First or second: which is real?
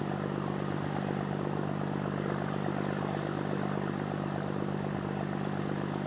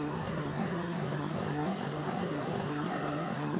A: first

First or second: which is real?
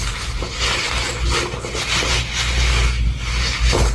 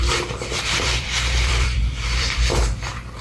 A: first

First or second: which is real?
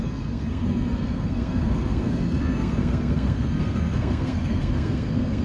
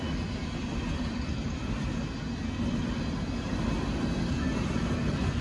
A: second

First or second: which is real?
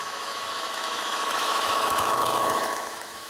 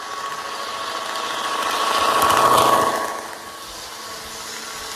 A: second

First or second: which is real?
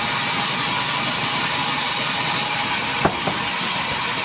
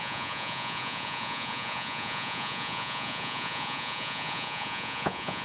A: first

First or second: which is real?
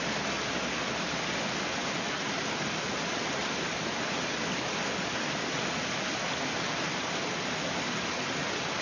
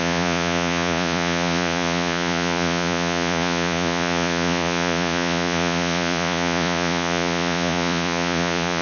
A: first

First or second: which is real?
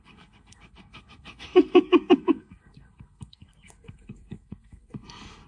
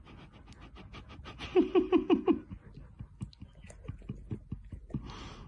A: second